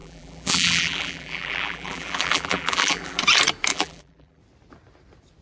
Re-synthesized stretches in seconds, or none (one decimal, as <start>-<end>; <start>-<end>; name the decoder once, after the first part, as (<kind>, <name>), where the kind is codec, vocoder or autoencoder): 0.0-3.2 (vocoder, BigVGAN v2); 3.7-4.4